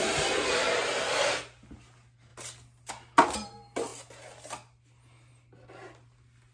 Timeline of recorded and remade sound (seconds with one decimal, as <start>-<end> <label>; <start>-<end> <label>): 0.0-6.5 recorded